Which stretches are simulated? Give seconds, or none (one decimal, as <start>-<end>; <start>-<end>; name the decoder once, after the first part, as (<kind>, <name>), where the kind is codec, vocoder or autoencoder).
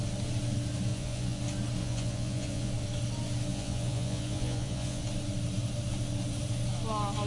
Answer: 0.9-1.4 (vocoder, Vocos); 1.8-2.7; 3.5-5.0